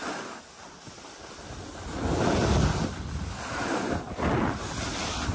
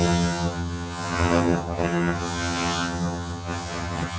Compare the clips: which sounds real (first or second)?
first